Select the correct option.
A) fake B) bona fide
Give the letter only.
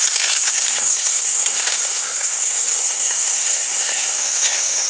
A